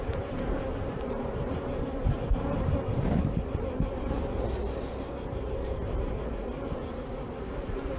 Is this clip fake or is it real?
fake